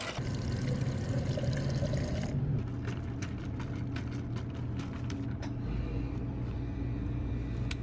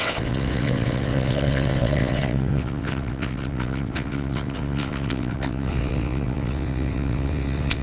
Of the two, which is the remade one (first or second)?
second